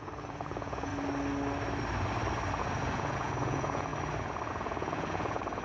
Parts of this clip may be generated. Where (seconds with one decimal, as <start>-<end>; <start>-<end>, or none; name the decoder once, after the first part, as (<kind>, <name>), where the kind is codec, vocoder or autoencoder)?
0.0-0.9 (vocoder, Vocos); 2.6-3.9; 4.5-5.6